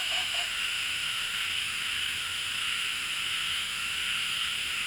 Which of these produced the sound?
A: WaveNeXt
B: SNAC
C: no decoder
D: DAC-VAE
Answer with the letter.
D